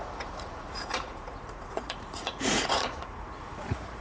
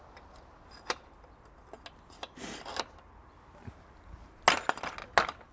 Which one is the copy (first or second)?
first